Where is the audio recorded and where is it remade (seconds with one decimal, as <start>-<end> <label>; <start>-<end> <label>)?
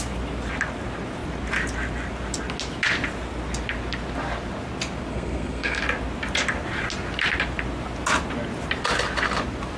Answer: 0.0-5.1 recorded; 5.1-5.8 remade; 5.8-9.8 recorded